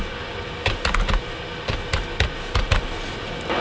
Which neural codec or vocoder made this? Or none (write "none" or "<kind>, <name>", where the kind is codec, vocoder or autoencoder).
none